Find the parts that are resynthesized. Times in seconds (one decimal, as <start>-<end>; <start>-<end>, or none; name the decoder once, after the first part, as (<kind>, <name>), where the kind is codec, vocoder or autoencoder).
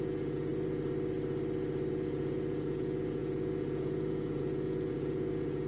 0.0-0.5 (vocoder, Vocos); 1.9-5.7